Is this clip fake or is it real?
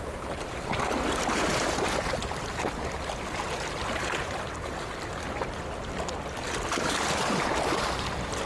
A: real